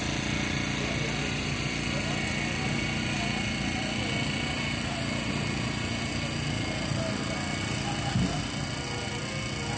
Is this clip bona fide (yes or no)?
yes